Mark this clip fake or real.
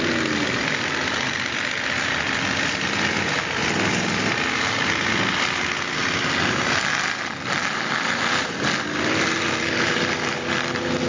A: real